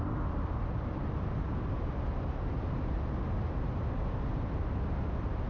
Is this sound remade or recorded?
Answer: recorded